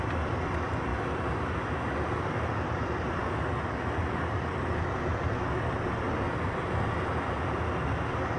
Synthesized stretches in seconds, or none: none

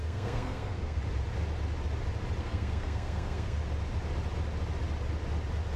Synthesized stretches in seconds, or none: 0.0-1.0 (codec, SNAC); 2.4-3.6

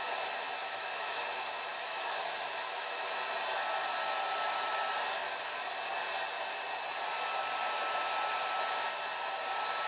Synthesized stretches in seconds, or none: 0.6-1.2 (autoencoder, DAC-VAE); 1.7-3.1

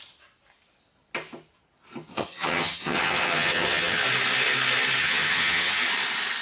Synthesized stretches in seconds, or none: 2.1-4.0 (vocoder, HiFi-GAN); 5.0-5.8

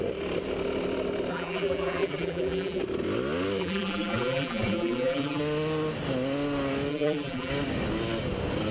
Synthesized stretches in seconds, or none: 1.3-2.8 (vocoder, BigVGAN v2); 3.6-5.4; 6.9-7.5